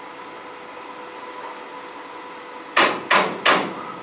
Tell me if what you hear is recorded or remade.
recorded